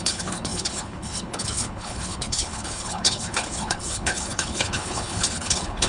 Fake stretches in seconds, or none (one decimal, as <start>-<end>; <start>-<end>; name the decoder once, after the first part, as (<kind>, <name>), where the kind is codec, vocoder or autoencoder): 0.0-5.9 (codec, HILCodec)